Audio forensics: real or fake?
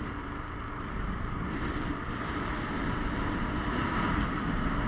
fake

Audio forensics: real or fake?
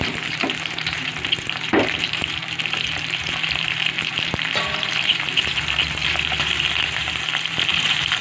fake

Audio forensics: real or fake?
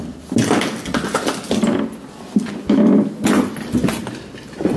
real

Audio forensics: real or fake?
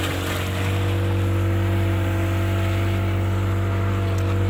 real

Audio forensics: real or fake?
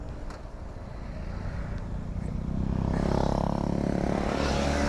real